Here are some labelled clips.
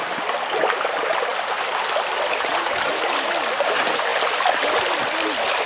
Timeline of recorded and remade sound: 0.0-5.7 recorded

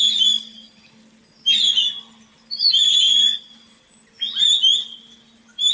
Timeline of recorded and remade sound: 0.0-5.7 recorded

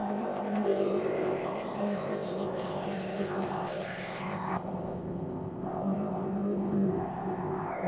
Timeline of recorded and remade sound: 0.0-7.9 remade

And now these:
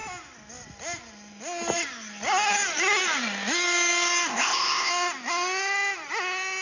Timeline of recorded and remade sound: 0.0-4.3 recorded; 4.3-4.9 remade; 4.9-6.6 recorded

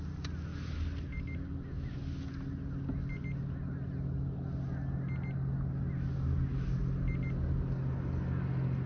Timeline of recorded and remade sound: 0.0-8.9 recorded

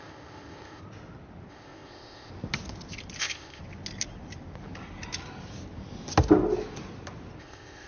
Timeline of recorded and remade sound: 0.0-0.8 remade; 0.8-1.5 recorded; 1.5-2.3 remade; 2.3-3.2 recorded; 3.2-3.6 remade; 3.6-7.4 recorded; 7.4-7.9 remade

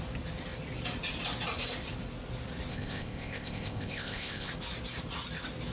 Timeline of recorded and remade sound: 0.0-2.7 recorded; 2.7-4.5 remade; 4.5-5.7 recorded

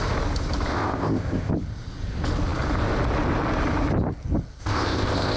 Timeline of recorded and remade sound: 0.0-0.7 recorded; 0.7-1.5 remade; 1.5-4.6 recorded; 4.6-5.4 remade